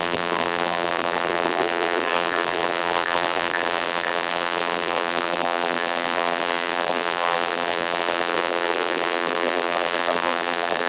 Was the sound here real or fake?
fake